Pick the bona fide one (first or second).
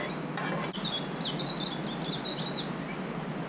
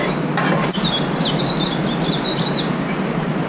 first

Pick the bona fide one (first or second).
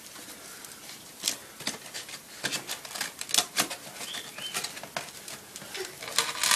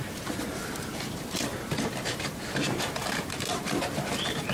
first